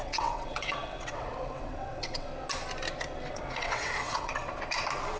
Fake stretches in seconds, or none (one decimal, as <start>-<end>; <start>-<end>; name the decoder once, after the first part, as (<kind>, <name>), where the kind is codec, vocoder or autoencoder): 0.0-2.3 (vocoder, WaveNeXt); 3.3-4.4